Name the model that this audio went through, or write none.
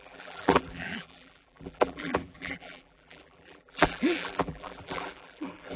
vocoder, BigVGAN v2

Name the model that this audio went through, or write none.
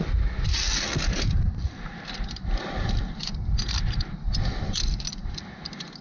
none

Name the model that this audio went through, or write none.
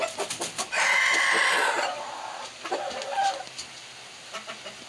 none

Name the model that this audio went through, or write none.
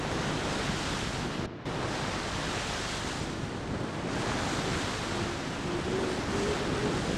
none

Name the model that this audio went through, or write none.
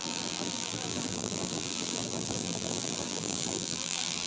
vocoder, BigVGAN v2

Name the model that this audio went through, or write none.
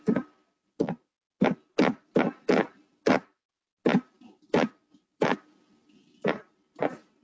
none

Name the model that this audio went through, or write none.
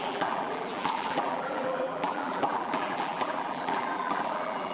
vocoder, BigVGAN v2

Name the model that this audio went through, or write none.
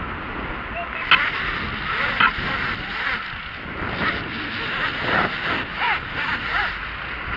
none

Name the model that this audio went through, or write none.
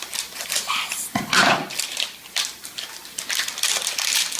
vocoder, BigVGAN v2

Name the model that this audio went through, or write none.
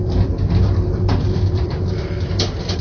vocoder, BigVGAN v2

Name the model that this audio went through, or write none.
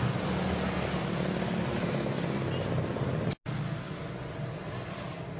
none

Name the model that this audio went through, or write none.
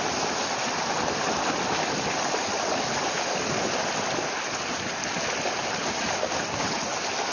none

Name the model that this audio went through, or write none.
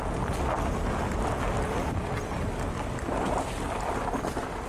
none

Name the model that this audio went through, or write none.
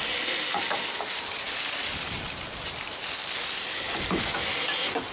none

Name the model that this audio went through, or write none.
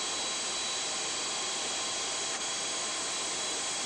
none